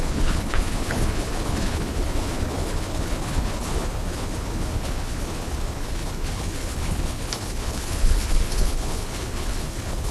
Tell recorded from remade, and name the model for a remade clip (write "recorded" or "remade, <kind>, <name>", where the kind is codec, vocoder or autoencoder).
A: remade, codec, HILCodec